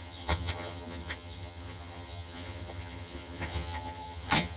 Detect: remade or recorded remade